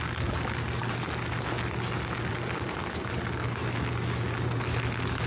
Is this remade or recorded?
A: recorded